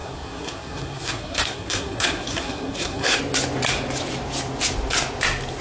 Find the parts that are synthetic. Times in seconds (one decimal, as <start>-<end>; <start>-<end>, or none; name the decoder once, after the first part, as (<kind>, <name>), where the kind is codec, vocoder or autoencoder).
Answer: 0.0-3.2 (codec, SNAC)